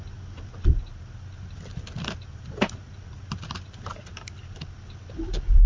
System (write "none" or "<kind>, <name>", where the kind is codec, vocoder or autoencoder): none